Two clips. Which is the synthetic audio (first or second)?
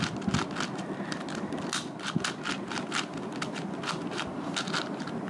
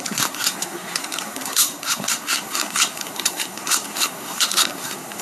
second